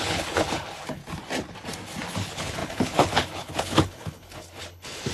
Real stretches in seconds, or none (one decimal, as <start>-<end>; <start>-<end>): 1.0-2.1